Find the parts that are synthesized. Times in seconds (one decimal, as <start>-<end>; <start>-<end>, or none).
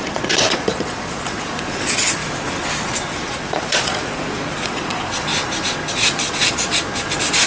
0.0-2.2; 3.3-5.3; 5.9-7.5